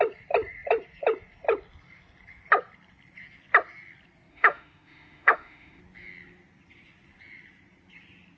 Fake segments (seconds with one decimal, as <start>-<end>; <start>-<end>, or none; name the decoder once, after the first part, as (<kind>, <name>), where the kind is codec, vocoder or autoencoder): 4.3-5.8 (autoencoder, DAC-VAE)